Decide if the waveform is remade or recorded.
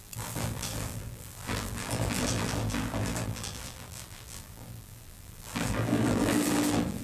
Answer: remade